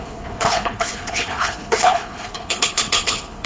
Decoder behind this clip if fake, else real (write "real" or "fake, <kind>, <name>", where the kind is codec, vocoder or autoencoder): fake, codec, HILCodec